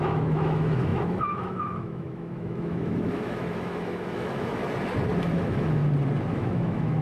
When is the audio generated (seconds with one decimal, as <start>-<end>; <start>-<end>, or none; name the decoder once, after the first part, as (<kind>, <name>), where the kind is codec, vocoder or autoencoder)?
0.0-4.6 (autoencoder, DAC-VAE); 5.3-5.8; 6.3-7.0